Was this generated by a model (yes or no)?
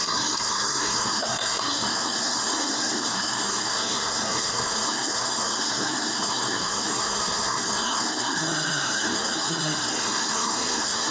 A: yes